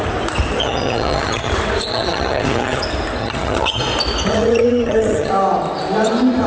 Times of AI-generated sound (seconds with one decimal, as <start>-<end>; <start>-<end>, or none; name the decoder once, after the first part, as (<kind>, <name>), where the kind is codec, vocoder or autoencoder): 0.6-1.5 (vocoder, HiFi-GAN); 1.9-2.8; 3.2-3.8; 4.3-5.3